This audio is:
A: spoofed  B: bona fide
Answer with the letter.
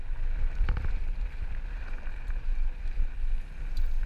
B